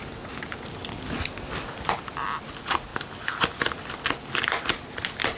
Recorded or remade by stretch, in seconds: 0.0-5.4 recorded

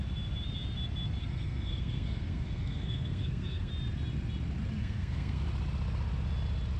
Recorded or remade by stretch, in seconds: 0.0-1.2 recorded; 1.2-3.7 remade; 3.7-4.8 recorded; 4.8-5.4 remade; 5.4-6.8 recorded

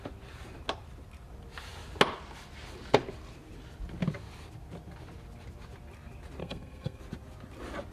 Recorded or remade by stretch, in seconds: 0.0-6.4 recorded; 6.4-7.0 remade; 7.0-7.9 recorded

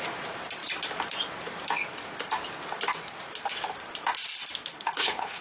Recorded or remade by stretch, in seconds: 0.0-4.7 recorded; 4.7-5.4 remade

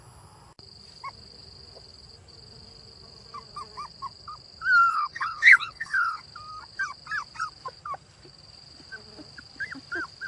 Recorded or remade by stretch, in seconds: 0.0-4.9 recorded; 4.9-6.2 remade; 6.2-10.3 recorded

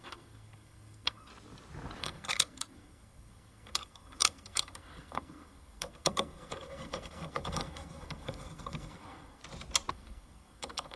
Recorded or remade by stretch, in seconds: 0.0-1.3 remade; 1.3-2.0 recorded; 2.0-9.4 remade; 9.4-9.9 recorded; 9.9-11.0 remade